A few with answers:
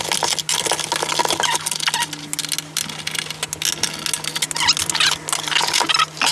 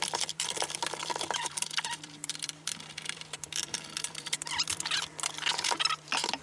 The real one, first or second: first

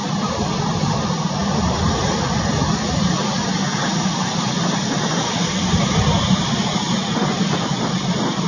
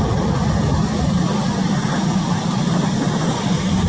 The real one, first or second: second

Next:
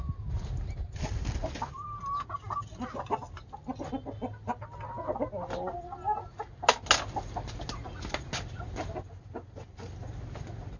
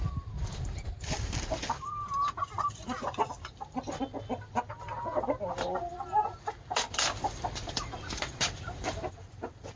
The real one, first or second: first